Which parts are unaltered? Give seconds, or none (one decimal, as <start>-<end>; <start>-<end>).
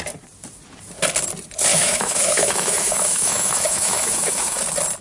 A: 0.0-1.7; 4.6-5.0